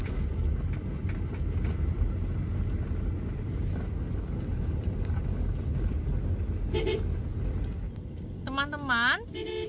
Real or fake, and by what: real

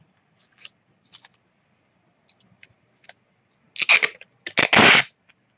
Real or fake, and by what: real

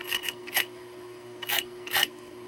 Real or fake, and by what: fake, codec, SNAC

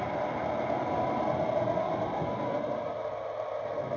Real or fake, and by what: real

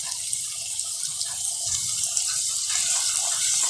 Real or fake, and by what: real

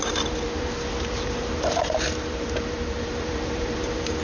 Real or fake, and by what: fake, vocoder, BigVGAN v2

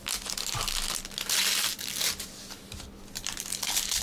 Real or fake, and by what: real